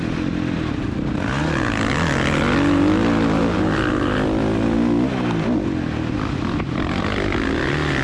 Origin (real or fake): real